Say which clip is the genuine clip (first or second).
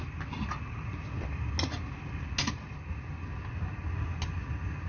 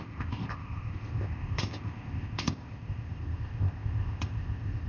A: first